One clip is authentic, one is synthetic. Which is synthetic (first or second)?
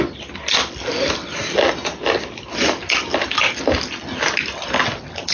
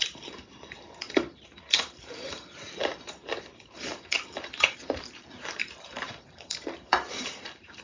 second